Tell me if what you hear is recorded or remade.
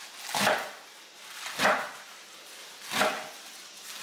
recorded